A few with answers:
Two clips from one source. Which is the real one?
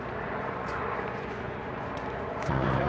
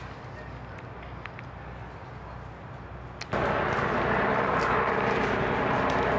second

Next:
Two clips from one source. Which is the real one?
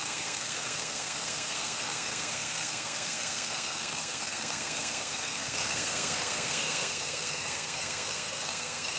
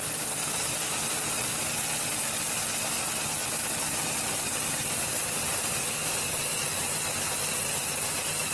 second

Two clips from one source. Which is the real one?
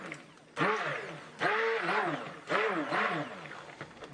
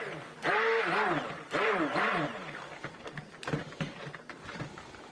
first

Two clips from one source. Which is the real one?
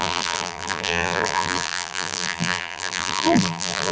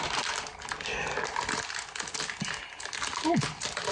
second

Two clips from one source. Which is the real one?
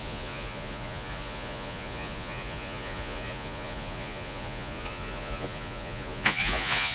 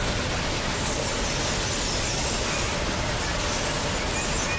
second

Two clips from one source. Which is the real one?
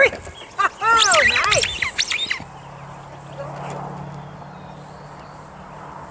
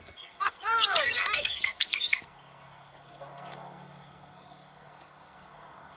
first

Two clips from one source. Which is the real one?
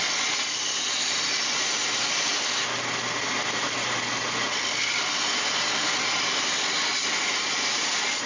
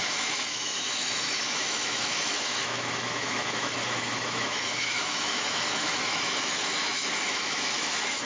first